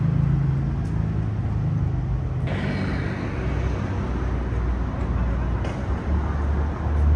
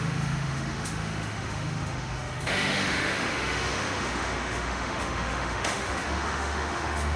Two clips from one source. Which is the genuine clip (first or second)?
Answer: first